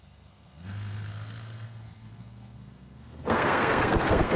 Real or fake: fake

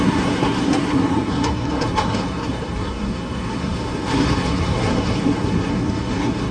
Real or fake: fake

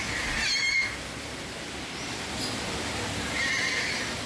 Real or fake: real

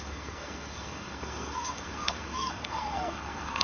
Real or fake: fake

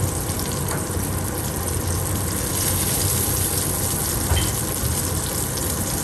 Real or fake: real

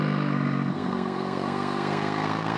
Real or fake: fake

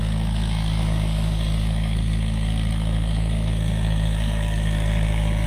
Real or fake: fake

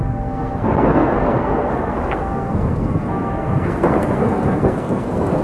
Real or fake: fake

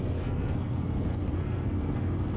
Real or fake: fake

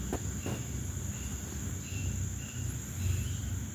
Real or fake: real